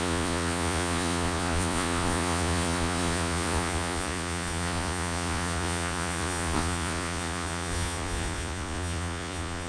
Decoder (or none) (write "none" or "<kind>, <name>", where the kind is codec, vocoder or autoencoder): vocoder, Vocos